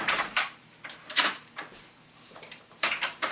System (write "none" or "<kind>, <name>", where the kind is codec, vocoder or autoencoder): vocoder, BigVGAN v2